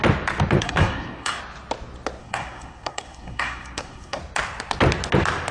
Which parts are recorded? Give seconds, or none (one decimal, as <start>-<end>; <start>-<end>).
0.0-0.6; 1.4-2.2; 4.2-5.5